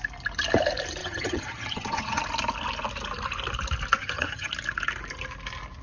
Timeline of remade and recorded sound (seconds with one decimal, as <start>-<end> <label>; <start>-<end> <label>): 0.0-1.0 recorded; 1.0-2.2 remade; 2.2-4.0 recorded; 4.0-4.5 remade; 4.5-5.8 recorded